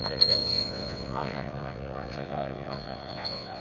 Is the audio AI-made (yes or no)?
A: yes